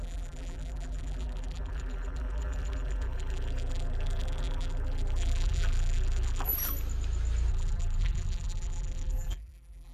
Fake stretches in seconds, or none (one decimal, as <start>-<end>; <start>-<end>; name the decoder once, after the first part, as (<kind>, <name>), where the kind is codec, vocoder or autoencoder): 0.0-6.5 (vocoder, BigVGAN v2); 7.5-9.9